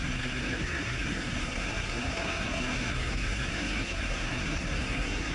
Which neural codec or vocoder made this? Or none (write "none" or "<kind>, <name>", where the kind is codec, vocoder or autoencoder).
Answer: codec, SNAC